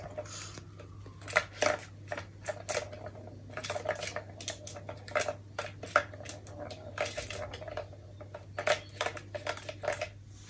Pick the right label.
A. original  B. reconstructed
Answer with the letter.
A